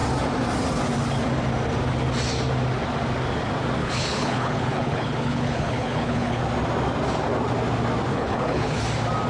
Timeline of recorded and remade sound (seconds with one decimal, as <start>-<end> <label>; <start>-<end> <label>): 0.0-3.8 recorded; 3.8-6.4 remade; 6.4-8.1 recorded; 8.1-8.8 remade; 8.8-9.3 recorded